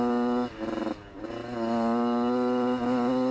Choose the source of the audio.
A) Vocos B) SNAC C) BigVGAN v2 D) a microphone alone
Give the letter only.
D